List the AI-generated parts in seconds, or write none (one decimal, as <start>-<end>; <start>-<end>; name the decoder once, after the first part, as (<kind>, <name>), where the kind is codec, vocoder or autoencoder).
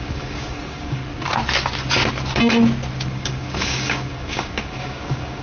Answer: 0.0-1.0 (codec, DAC); 2.9-5.4